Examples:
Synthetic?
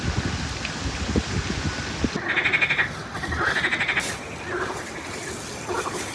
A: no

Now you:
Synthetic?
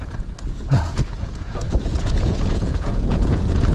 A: yes